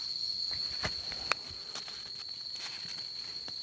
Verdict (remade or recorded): recorded